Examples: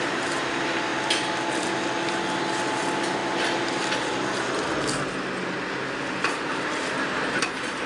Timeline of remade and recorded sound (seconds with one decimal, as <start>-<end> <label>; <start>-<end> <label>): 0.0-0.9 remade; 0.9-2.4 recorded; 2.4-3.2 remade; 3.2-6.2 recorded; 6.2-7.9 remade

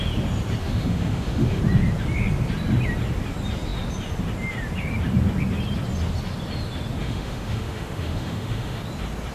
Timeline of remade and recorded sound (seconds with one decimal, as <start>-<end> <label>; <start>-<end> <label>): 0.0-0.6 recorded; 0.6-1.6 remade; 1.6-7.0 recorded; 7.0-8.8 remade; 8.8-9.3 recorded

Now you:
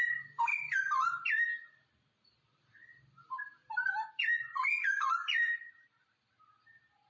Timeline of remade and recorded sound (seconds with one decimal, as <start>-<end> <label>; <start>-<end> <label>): 0.0-7.1 recorded

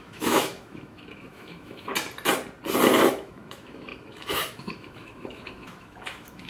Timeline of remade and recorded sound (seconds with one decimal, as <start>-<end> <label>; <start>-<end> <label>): 0.0-1.9 remade; 1.9-3.1 recorded; 3.1-6.5 remade

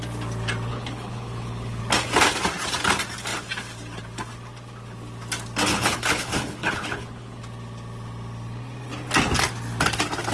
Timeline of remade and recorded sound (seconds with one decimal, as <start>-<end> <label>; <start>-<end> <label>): 0.0-0.7 recorded; 0.7-1.8 remade; 1.8-5.7 recorded; 5.7-7.4 remade; 7.4-10.3 recorded

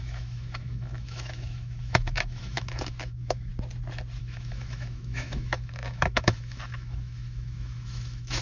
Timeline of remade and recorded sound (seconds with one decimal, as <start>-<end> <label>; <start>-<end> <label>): 0.0-3.5 remade; 3.5-4.2 recorded; 4.2-8.4 remade